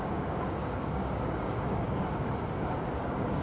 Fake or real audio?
fake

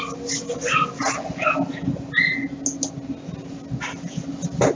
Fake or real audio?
real